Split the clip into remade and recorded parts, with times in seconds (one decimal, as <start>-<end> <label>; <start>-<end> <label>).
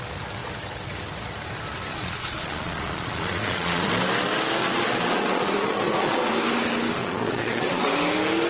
0.0-1.9 recorded; 1.9-3.9 remade; 3.9-4.6 recorded; 4.6-6.3 remade; 6.3-7.0 recorded; 7.0-7.9 remade; 7.9-8.5 recorded